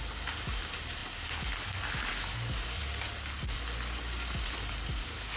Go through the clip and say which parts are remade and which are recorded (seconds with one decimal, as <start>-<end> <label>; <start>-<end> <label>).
0.0-5.4 recorded